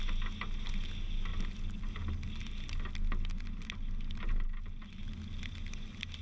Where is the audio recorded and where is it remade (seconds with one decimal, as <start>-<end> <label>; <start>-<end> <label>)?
0.0-6.2 recorded